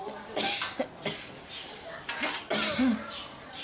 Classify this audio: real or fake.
real